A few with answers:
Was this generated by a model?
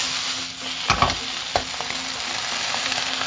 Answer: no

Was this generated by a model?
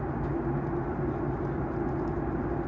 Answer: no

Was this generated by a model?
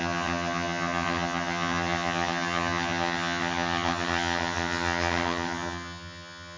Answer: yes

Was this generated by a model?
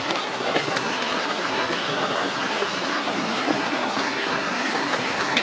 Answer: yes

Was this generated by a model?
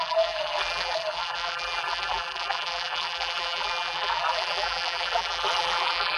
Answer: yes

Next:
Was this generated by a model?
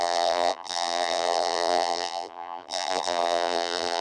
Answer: yes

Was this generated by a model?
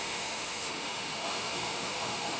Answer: yes